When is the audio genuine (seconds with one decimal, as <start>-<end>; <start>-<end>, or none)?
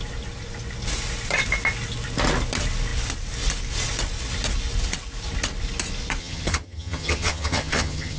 0.0-6.2